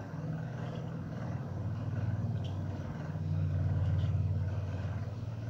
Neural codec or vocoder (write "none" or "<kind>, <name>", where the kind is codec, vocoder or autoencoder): codec, DAC